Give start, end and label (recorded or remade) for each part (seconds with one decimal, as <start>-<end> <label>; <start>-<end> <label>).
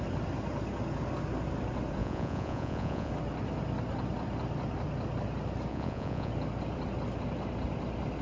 0.0-2.0 recorded; 2.0-3.1 remade; 3.1-5.7 recorded; 5.7-6.3 remade; 6.3-8.2 recorded